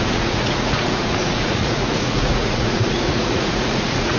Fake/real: fake